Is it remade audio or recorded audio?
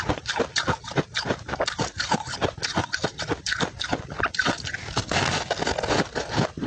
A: recorded